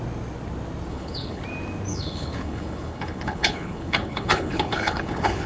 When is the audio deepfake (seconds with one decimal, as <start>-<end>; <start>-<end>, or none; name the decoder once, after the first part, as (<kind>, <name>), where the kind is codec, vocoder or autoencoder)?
0.9-1.4 (codec, HILCodec); 1.9-5.5